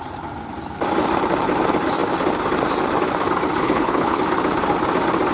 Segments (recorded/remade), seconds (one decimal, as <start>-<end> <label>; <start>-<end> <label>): 0.0-3.6 recorded; 3.6-4.2 remade; 4.2-5.3 recorded